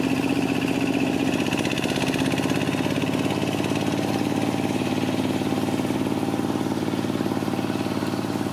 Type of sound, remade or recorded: recorded